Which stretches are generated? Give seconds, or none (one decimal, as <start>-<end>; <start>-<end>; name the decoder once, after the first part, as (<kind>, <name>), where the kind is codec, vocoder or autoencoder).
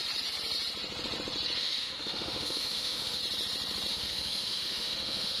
1.6-3.2 (autoencoder, DAC-VAE); 3.9-5.4